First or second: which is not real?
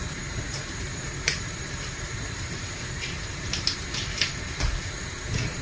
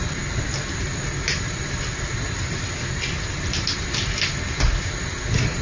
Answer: first